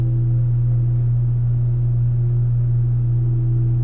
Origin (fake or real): real